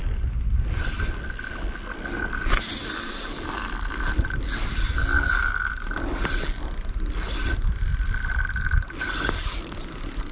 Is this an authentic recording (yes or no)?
yes